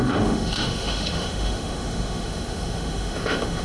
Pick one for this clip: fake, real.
fake